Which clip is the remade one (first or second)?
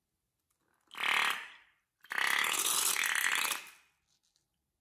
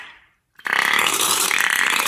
second